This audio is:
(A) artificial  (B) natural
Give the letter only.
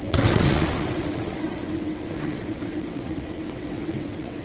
A